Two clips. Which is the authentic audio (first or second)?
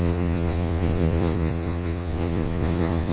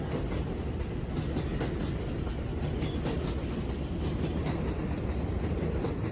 second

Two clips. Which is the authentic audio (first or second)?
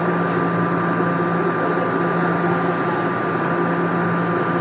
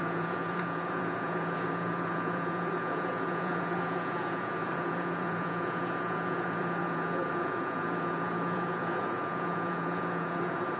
first